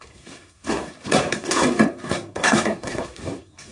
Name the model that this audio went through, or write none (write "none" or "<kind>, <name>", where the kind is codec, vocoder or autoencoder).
codec, SNAC